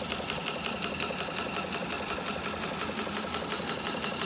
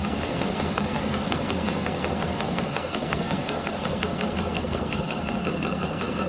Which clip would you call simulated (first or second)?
second